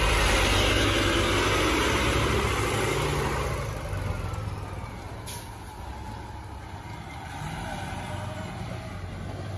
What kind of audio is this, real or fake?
real